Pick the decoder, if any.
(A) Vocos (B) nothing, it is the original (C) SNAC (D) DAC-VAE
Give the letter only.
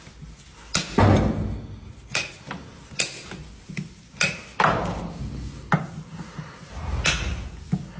B